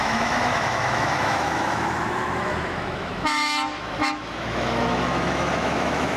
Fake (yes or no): yes